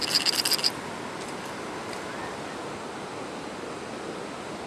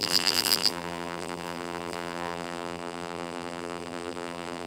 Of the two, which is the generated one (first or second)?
second